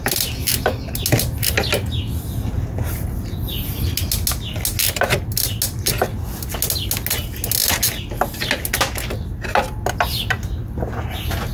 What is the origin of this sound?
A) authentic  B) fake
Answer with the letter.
A